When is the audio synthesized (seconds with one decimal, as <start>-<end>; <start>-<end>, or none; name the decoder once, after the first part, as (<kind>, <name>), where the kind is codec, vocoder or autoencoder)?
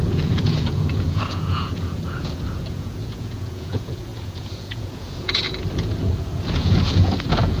0.0-7.6 (vocoder, Vocos)